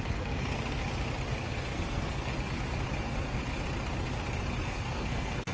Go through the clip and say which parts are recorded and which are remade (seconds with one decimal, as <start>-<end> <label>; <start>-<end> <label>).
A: 0.0-0.8 remade; 0.8-1.4 recorded; 1.4-2.3 remade; 2.3-3.0 recorded; 3.0-3.4 remade; 3.4-4.6 recorded; 4.6-5.5 remade